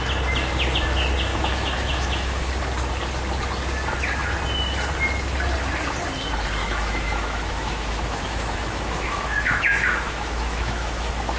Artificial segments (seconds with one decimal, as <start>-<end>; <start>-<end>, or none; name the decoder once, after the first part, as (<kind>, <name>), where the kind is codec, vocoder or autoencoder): 1.3-2.5 (autoencoder, DAC-VAE); 6.6-11.4